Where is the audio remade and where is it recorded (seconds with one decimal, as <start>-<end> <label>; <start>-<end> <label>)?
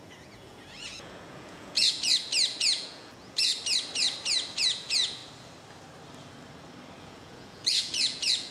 0.0-2.1 remade; 2.1-2.6 recorded; 2.6-3.5 remade; 3.5-4.7 recorded; 4.7-5.2 remade; 5.2-7.0 recorded; 7.0-8.5 remade